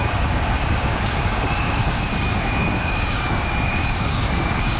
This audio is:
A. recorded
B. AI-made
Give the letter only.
B